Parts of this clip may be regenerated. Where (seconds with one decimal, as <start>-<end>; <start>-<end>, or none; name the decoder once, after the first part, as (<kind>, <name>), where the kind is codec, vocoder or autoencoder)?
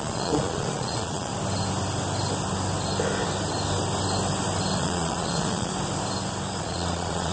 0.0-1.3 (vocoder, Vocos); 4.8-5.7; 6.6-7.3